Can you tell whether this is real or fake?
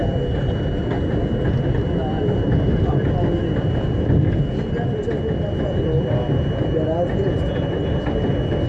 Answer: real